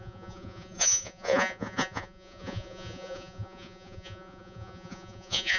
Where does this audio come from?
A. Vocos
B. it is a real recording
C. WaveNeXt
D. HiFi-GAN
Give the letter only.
A